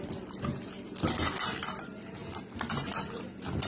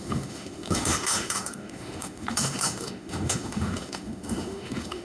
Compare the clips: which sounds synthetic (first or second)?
second